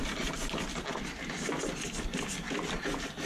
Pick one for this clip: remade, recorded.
recorded